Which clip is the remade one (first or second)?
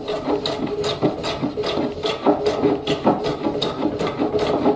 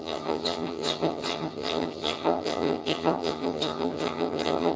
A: second